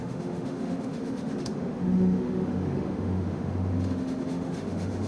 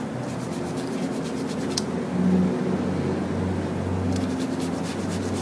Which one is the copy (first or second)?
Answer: first